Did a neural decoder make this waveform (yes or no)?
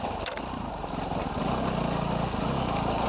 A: no